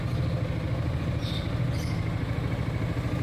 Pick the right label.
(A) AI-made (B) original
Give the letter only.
B